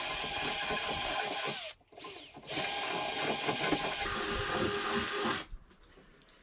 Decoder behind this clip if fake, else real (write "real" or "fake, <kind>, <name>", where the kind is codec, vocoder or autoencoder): real